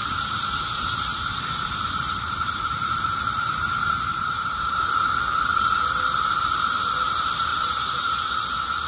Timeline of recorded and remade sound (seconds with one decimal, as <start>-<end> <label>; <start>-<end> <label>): 0.0-5.1 remade; 5.1-7.5 recorded; 7.5-8.2 remade; 8.2-8.9 recorded